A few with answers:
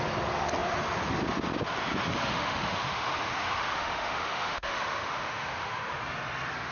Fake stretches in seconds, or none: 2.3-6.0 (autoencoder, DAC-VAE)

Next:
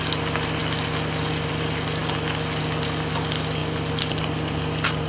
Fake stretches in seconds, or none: none

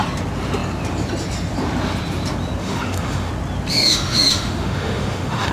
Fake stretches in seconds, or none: 2.6-3.3 (autoencoder, DAC-VAE); 3.7-5.5

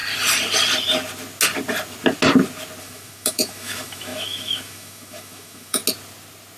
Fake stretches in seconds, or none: 2.8-5.8 (autoencoder, DAC-VAE)

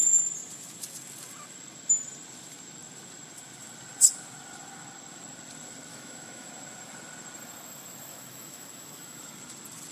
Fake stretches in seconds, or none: 5.9-6.5 (autoencoder, DAC-VAE); 8.1-9.2